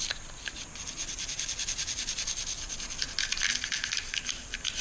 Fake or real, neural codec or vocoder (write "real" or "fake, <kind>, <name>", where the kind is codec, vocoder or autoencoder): real